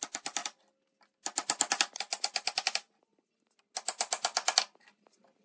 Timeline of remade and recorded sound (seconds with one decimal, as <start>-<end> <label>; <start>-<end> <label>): 0.0-5.4 recorded